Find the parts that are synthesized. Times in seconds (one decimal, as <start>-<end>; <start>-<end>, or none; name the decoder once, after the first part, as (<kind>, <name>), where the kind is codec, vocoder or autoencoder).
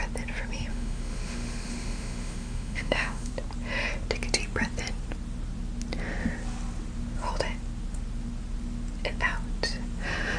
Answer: 0.7-3.3 (autoencoder, DAC-VAE)